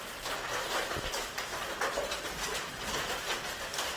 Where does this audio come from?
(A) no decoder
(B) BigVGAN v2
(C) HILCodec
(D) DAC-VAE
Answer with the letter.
B